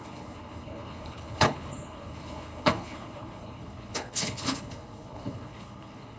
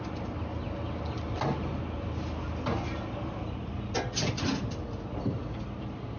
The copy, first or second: first